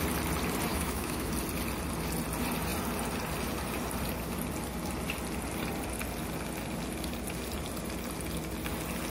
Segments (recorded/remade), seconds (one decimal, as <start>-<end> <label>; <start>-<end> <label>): 0.0-0.7 recorded; 0.7-1.3 remade; 1.3-9.1 recorded